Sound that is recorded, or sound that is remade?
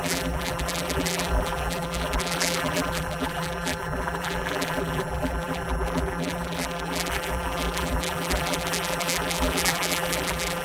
remade